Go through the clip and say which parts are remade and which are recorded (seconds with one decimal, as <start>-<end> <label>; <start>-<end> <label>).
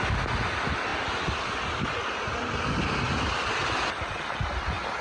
0.0-5.0 recorded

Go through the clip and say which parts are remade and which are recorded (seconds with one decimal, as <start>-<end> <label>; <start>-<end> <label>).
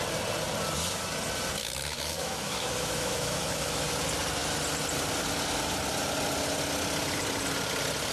0.0-1.6 recorded; 1.6-3.7 remade; 3.7-8.1 recorded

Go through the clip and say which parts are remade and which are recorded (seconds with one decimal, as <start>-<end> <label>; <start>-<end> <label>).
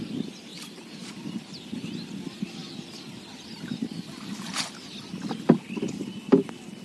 0.0-6.8 recorded